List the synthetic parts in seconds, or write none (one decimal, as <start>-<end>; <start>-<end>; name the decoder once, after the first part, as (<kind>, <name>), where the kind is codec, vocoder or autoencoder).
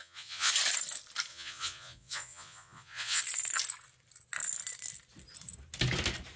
0.0-0.5 (vocoder, Vocos); 1.3-3.2